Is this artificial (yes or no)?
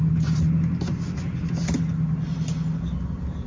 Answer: no